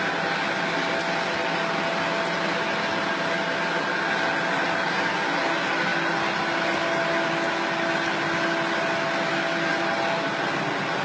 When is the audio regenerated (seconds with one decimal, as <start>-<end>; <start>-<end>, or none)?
none